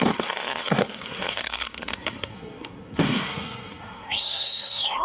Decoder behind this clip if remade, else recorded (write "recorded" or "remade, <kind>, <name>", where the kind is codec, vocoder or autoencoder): remade, codec, SNAC